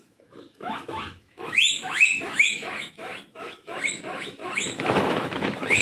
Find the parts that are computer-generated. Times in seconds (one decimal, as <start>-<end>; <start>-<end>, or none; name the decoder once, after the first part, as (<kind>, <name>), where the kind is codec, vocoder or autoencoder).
0.0-5.8 (autoencoder, DAC-VAE)